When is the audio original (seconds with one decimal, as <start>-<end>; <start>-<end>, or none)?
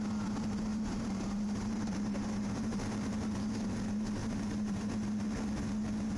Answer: 0.0-0.7; 2.8-4.2; 4.9-6.2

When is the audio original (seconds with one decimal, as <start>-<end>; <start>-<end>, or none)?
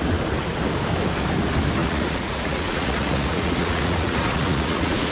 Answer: 0.0-1.8